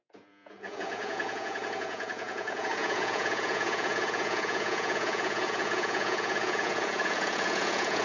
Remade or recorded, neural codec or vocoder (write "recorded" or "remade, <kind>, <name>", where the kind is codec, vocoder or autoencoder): remade, vocoder, Vocos